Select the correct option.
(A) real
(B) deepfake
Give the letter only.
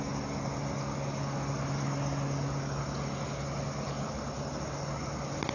A